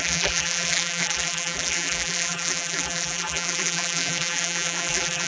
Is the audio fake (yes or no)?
yes